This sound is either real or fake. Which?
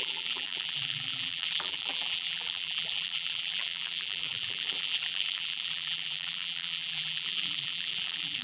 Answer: fake